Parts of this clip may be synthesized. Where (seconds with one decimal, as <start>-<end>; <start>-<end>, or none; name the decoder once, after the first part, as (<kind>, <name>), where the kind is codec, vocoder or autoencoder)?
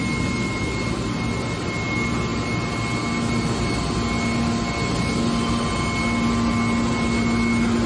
none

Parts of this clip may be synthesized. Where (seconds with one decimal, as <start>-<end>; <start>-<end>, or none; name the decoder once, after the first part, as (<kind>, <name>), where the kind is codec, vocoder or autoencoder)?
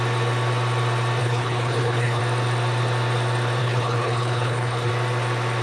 1.2-2.2 (codec, HILCodec); 3.6-4.9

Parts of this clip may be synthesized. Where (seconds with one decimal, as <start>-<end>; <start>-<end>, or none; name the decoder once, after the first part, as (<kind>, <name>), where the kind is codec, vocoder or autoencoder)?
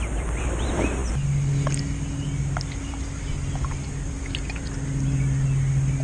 none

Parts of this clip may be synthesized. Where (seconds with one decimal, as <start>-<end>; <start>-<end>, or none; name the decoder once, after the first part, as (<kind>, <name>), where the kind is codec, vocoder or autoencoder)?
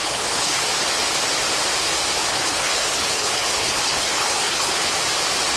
0.0-0.6 (codec, HILCodec); 2.2-4.9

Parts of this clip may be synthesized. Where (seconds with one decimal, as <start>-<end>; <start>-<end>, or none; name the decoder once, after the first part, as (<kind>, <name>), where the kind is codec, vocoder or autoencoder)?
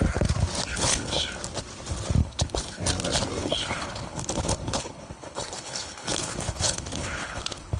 0.7-1.3 (codec, HILCodec); 2.2-2.8; 3.4-7.8